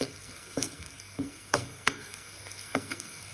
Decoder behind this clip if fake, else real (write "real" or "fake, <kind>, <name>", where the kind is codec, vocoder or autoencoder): fake, codec, SNAC